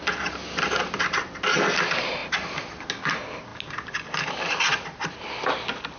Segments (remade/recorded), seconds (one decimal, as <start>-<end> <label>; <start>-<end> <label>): 0.0-6.0 recorded